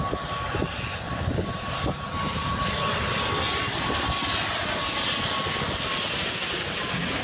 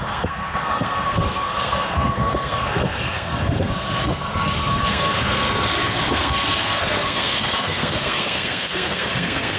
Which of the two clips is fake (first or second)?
second